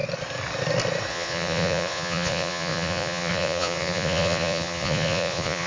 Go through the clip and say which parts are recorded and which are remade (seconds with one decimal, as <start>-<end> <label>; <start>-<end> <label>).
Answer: 0.0-1.1 recorded; 1.1-5.7 remade